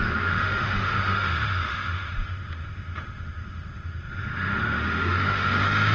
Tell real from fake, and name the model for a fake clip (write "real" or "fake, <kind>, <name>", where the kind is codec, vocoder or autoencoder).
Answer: fake, autoencoder, DAC-VAE